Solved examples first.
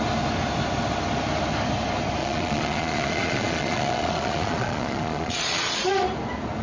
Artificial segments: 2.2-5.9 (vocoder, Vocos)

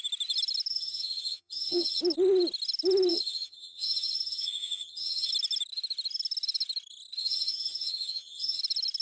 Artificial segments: 0.7-2.0 (vocoder, HiFi-GAN); 3.1-5.3; 7.2-8.6

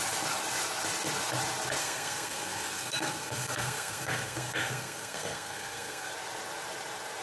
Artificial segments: 1.8-6.1 (codec, SNAC)

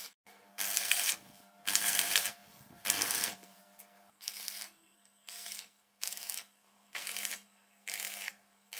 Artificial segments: 0.0-8.8 (codec, SNAC)

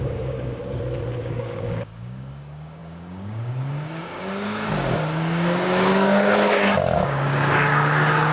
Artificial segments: 0.0-0.6 (codec, DAC); 1.2-8.3

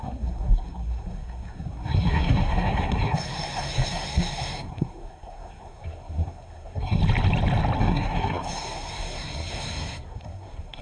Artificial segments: 0.0-7.0 (codec, SNAC); 7.8-10.8